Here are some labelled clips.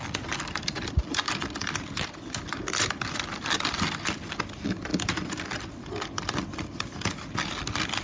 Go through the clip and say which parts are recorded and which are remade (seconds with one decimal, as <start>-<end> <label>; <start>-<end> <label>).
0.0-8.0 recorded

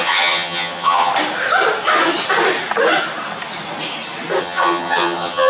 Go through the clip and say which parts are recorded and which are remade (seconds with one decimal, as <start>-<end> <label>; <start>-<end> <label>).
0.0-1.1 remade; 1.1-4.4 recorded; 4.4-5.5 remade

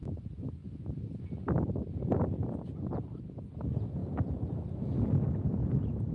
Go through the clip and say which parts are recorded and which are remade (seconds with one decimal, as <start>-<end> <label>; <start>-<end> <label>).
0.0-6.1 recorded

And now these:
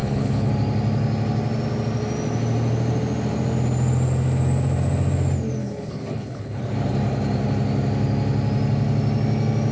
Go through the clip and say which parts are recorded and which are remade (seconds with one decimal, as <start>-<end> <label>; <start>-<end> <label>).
0.0-0.5 remade; 0.5-5.6 recorded; 5.6-6.6 remade; 6.6-9.7 recorded